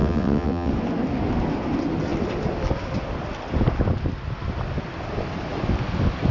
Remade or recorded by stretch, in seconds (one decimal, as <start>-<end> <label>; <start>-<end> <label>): 0.0-0.7 remade; 0.7-6.3 recorded